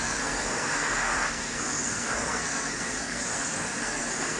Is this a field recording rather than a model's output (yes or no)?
no